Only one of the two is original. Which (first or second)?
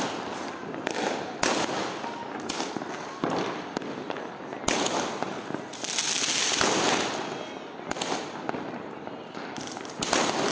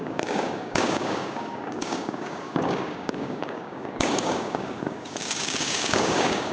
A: first